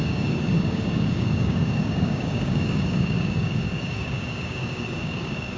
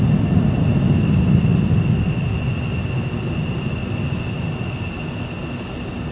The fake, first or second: first